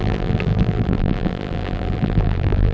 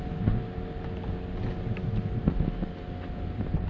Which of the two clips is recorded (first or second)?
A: second